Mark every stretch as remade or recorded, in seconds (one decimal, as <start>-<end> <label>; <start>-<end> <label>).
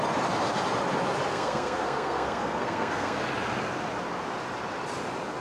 0.0-1.3 recorded; 1.3-3.2 remade; 3.2-5.4 recorded